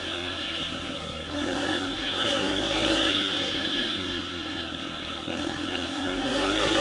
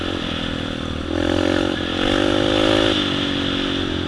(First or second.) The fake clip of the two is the first